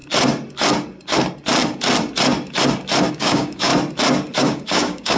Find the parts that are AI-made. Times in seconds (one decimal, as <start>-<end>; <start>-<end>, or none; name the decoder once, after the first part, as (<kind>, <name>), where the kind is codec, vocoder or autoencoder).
3.1-3.7 (codec, DAC); 4.4-5.2